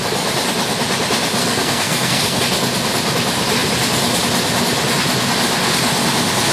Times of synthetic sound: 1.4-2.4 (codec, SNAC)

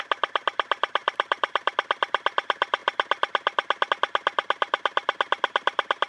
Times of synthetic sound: 1.0-1.7 (vocoder, BigVGAN v2)

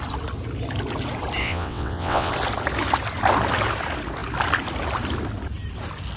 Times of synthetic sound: 1.4-2.3 (vocoder, WaveNeXt)